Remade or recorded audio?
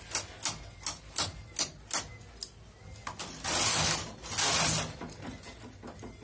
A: recorded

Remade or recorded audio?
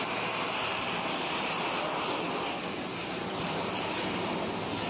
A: recorded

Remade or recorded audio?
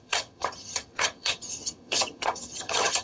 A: remade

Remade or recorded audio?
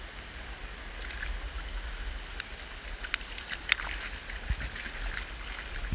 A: recorded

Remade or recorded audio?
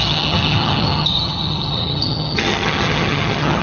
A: remade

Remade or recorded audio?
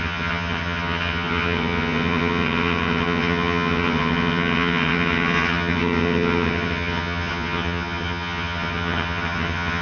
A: remade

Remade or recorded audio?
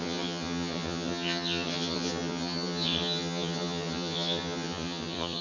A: remade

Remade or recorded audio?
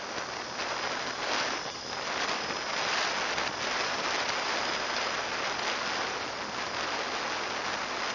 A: recorded